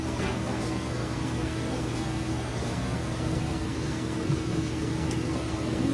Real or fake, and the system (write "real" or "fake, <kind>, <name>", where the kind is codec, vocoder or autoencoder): fake, codec, SNAC